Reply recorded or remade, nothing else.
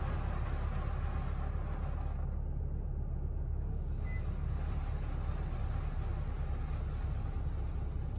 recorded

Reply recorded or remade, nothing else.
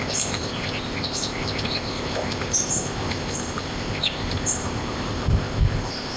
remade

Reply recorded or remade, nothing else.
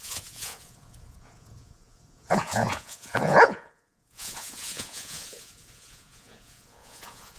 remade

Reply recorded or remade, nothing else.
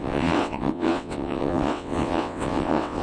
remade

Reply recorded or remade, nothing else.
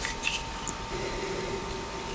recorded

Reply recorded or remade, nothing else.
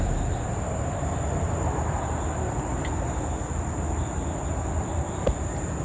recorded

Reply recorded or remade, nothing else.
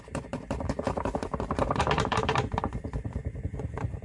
remade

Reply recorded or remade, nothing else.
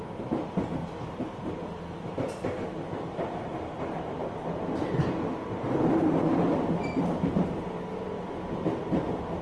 remade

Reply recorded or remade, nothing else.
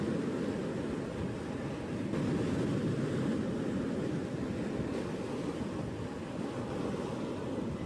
recorded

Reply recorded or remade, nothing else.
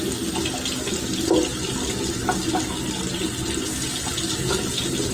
recorded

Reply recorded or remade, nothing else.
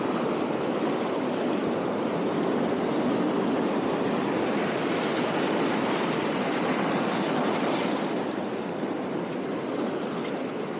recorded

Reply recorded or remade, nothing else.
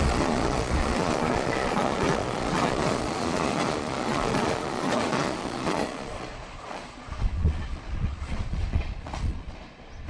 remade